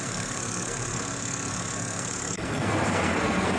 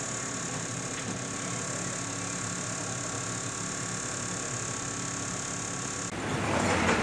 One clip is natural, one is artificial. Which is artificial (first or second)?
first